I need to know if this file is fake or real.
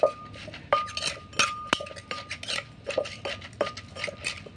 real